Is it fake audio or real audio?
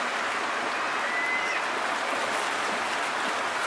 real